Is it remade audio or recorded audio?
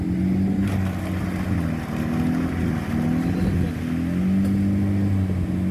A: recorded